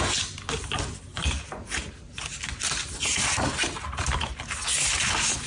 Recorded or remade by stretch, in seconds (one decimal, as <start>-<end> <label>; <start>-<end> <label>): 0.0-5.5 recorded